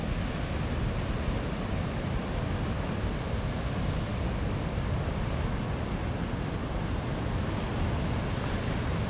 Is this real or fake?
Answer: real